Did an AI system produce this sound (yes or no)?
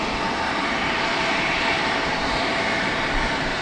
yes